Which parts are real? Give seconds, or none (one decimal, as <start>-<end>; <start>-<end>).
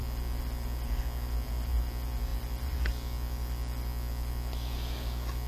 0.0-5.5